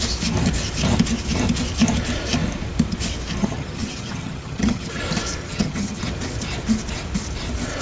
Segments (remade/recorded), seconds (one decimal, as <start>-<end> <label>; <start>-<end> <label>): 0.0-3.4 recorded; 3.4-5.0 remade; 5.0-5.4 recorded; 5.4-6.0 remade; 6.0-7.8 recorded